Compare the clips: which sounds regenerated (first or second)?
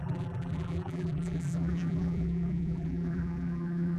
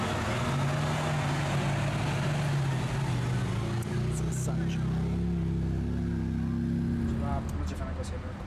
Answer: first